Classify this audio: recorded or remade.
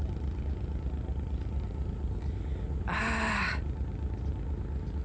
recorded